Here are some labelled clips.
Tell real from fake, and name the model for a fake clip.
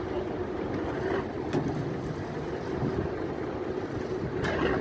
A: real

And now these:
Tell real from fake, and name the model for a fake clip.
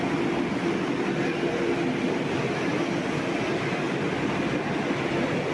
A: real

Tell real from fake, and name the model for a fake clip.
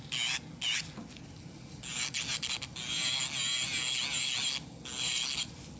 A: real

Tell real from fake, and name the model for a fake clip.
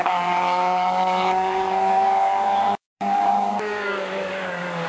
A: fake, codec, DAC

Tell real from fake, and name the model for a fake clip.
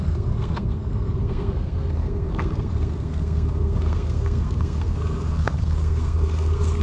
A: fake, codec, SNAC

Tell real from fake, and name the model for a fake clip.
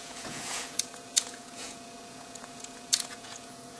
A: fake, vocoder, Vocos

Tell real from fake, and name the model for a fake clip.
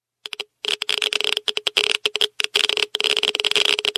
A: real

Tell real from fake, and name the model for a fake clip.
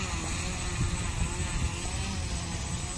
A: real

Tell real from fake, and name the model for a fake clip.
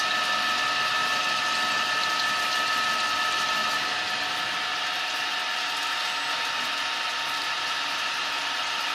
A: real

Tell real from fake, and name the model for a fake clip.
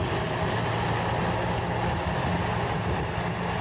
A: real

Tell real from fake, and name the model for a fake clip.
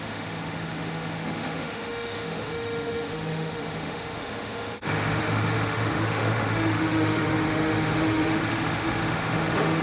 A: fake, autoencoder, DAC-VAE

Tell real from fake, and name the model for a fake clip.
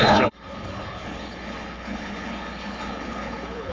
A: fake, codec, HILCodec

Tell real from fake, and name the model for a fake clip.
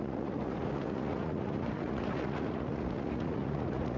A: fake, vocoder, Vocos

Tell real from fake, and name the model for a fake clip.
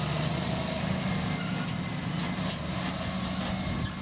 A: real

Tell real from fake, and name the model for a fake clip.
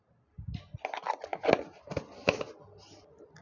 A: real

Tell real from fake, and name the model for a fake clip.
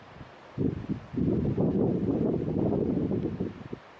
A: real